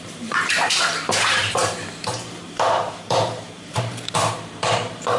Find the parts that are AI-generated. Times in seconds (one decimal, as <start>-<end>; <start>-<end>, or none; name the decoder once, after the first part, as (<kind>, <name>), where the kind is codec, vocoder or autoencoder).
0.0-5.2 (vocoder, BigVGAN v2)